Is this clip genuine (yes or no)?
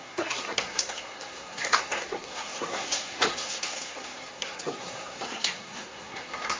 no